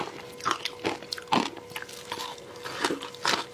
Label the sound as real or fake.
real